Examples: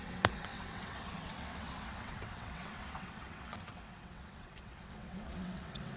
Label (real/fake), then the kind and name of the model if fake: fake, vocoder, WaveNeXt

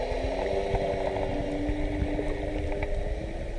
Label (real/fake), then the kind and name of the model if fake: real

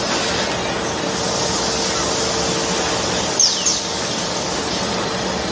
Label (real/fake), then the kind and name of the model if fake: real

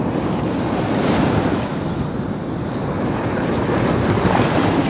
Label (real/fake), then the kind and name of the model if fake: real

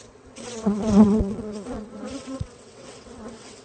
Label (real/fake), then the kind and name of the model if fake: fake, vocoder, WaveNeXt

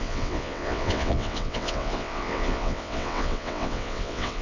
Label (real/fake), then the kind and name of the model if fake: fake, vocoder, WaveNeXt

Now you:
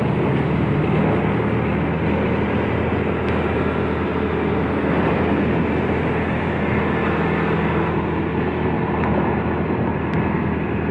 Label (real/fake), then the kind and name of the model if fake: real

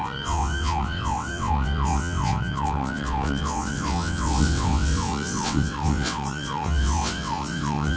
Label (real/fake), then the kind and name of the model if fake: fake, vocoder, WaveNeXt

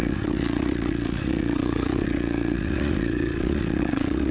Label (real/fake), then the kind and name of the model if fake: fake, vocoder, WaveNeXt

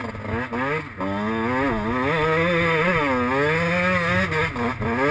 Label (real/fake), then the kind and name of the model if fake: real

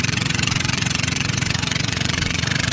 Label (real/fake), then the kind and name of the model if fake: fake, vocoder, WaveNeXt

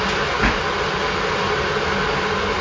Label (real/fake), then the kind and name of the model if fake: real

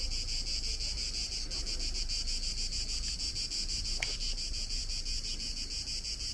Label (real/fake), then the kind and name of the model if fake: real